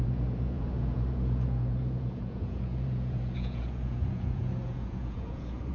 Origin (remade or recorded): remade